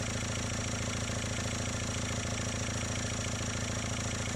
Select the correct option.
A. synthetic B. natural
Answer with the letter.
B